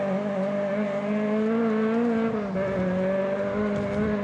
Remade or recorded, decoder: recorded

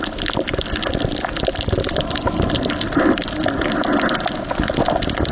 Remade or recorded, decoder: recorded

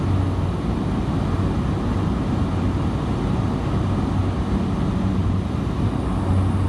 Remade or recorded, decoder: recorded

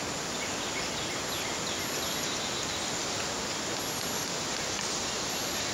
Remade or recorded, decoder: recorded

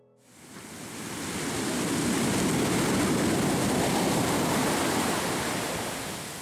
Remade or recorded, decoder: recorded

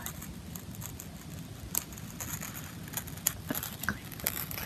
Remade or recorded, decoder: recorded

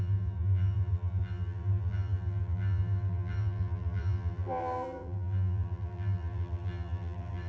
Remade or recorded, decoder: remade, vocoder, BigVGAN v2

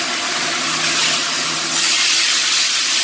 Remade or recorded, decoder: recorded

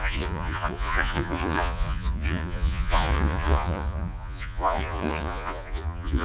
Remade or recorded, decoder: remade, vocoder, Vocos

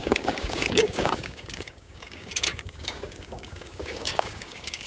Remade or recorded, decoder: remade, codec, DAC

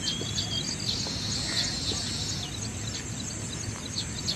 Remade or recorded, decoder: recorded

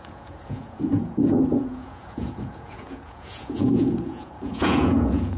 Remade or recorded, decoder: remade, vocoder, Vocos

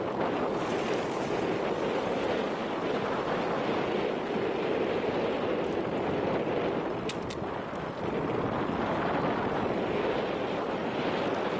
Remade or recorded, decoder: recorded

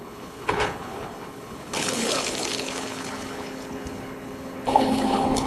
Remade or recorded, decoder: remade, codec, HILCodec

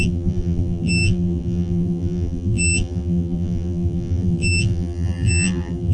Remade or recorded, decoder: remade, vocoder, BigVGAN v2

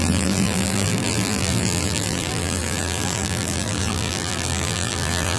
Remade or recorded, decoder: remade, vocoder, BigVGAN v2